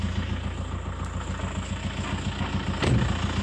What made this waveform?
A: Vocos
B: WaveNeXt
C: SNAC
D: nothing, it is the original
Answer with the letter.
D